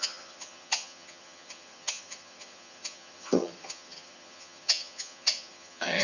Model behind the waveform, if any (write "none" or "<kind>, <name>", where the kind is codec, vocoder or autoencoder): vocoder, HiFi-GAN